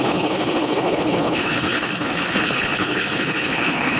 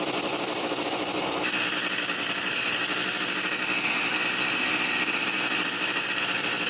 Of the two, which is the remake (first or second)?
first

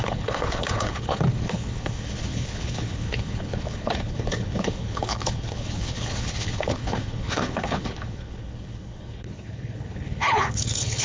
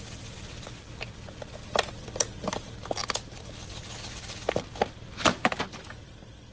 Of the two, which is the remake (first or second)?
first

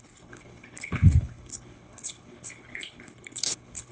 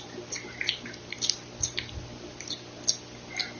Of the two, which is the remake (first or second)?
first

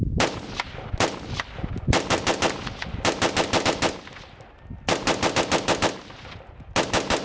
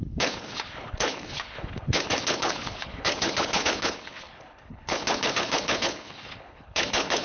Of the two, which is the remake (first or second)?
second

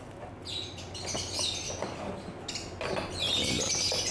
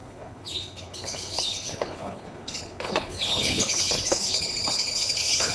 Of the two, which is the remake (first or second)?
second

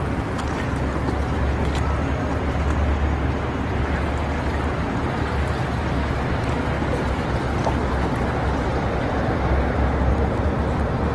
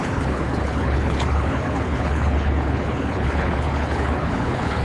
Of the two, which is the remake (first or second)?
second